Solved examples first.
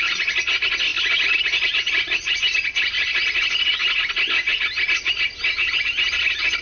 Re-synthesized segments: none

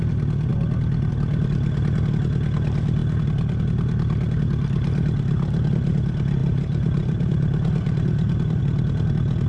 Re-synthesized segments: 6.4-8.6 (vocoder, BigVGAN v2)

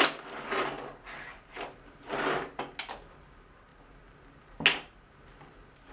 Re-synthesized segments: 1.5-2.6 (vocoder, BigVGAN v2)

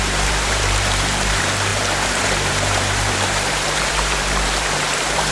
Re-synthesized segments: 0.0-5.3 (vocoder, BigVGAN v2)

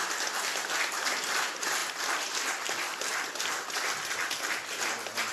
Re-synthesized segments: 1.8-4.4 (vocoder, BigVGAN v2)

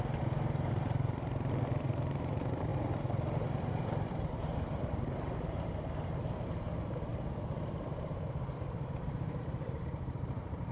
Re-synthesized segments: 0.0-7.1 (vocoder, BigVGAN v2); 7.6-10.7

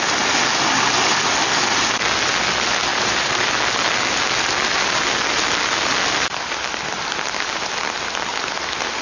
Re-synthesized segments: 2.9-3.5 (vocoder, BigVGAN v2)

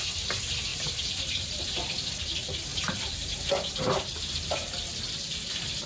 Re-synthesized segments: 0.7-2.1 (vocoder, BigVGAN v2); 2.7-4.0